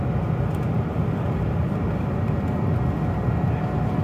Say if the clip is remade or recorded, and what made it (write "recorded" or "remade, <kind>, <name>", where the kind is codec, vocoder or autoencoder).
recorded